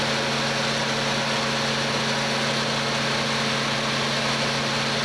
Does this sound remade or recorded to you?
recorded